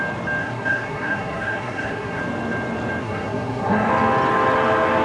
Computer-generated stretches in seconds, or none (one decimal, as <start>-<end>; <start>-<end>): 0.4-2.2; 3.0-3.9